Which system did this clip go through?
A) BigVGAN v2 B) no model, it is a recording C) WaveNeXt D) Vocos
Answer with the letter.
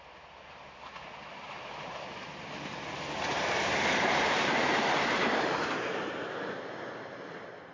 B